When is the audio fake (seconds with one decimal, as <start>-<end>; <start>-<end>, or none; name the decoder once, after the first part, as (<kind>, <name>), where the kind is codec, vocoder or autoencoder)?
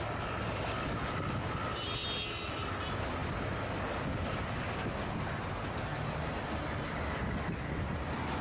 none